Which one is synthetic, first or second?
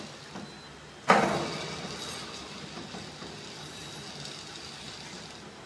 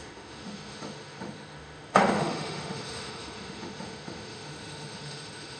second